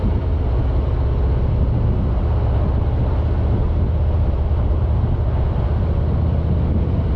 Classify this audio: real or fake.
real